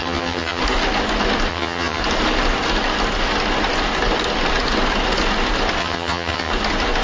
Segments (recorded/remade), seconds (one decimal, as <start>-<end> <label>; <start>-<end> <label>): 0.0-0.6 remade; 0.6-1.5 recorded; 1.5-2.0 remade; 2.0-5.8 recorded; 5.8-6.5 remade; 6.5-7.0 recorded